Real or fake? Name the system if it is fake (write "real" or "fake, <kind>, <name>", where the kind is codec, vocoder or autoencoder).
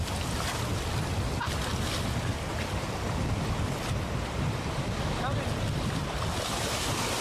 real